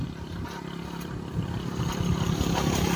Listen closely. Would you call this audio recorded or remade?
remade